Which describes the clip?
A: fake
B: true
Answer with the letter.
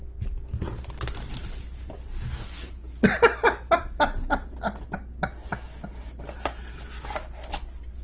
B